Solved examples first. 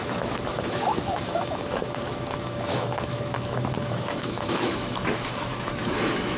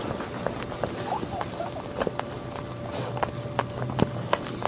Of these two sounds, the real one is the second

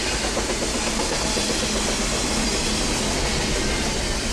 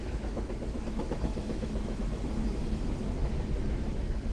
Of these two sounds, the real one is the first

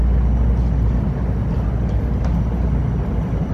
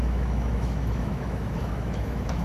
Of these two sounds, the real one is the first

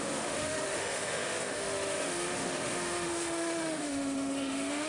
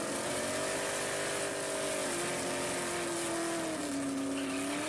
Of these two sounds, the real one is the second